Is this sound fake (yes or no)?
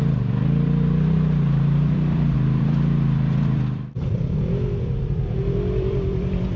yes